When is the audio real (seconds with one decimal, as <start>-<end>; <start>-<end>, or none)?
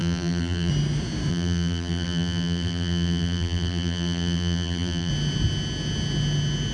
0.7-1.3; 5.1-6.7